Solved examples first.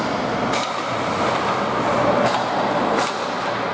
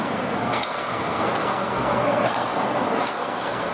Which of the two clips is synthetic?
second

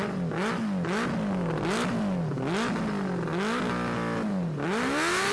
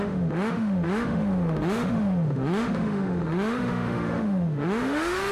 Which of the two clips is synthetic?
second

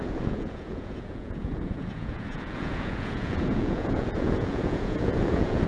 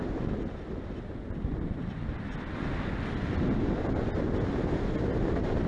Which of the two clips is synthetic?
first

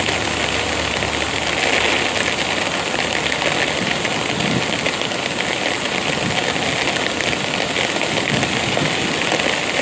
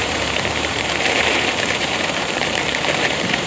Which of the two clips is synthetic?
second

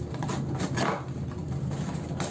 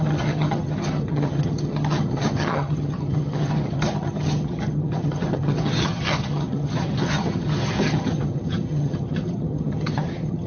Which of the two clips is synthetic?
second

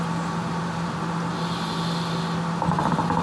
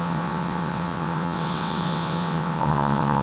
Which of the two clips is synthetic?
second